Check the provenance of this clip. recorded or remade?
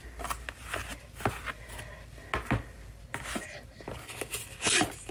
recorded